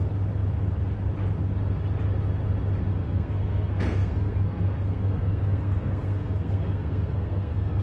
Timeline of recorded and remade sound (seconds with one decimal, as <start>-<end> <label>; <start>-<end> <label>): 0.0-2.9 recorded; 2.9-7.8 remade